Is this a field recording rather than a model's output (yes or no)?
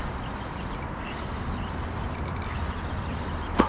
yes